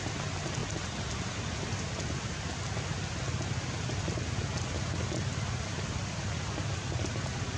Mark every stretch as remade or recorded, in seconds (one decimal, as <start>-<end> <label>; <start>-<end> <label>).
0.0-7.6 recorded